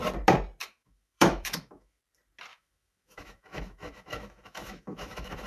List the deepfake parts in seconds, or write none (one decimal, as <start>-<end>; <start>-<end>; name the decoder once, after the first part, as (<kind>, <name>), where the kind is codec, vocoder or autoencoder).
0.6-2.0 (autoencoder, DAC-VAE); 2.5-5.5

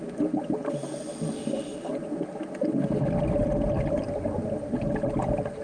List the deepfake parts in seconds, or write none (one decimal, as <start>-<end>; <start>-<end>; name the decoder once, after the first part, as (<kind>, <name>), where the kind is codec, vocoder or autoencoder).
none

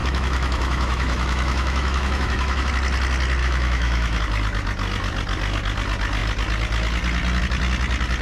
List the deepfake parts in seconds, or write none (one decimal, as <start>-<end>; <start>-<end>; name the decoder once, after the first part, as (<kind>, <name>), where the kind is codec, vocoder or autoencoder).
0.0-2.7 (autoencoder, DAC-VAE); 3.4-4.2

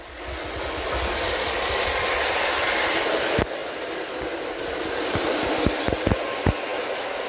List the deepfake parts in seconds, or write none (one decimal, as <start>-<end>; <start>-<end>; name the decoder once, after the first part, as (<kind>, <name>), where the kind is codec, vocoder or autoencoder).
none

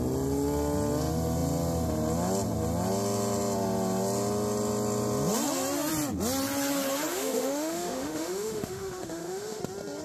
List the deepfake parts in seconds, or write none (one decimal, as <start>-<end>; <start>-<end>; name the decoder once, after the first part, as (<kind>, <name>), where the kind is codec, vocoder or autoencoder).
7.1-9.6 (autoencoder, DAC-VAE)

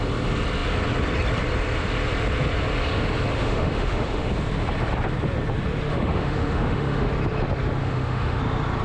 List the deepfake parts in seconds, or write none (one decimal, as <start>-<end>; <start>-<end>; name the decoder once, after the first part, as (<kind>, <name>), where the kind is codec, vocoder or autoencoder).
3.3-4.3 (autoencoder, DAC-VAE); 5.9-7.1; 7.8-8.4

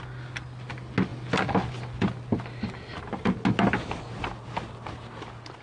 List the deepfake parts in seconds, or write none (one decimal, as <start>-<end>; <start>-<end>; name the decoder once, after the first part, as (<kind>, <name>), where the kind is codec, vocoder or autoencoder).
none